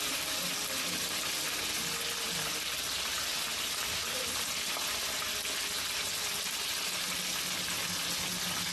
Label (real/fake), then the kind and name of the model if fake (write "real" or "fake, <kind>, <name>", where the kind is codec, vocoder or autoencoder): real